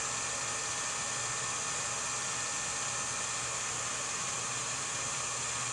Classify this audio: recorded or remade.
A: recorded